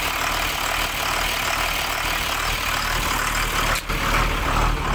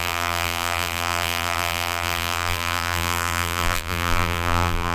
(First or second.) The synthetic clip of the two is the second